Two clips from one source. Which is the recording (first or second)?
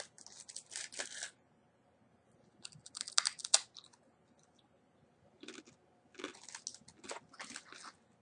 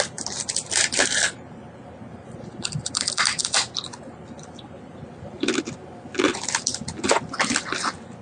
first